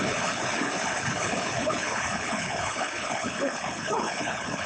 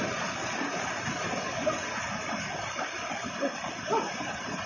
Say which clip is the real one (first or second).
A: second